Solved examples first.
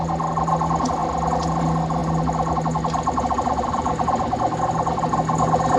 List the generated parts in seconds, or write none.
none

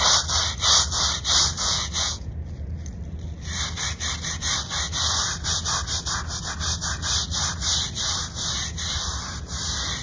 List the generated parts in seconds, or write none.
1.6-2.3 (vocoder, Vocos)

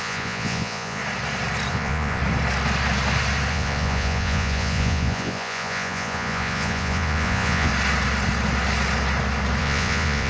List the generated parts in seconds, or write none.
0.0-1.0 (vocoder, Vocos); 1.7-2.2; 3.5-7.7; 9.6-10.3

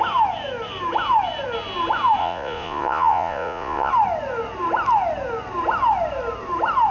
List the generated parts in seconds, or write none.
2.2-3.9 (vocoder, Vocos)

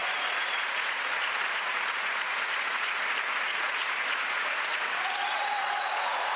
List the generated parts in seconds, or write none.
0.0-6.4 (vocoder, Vocos)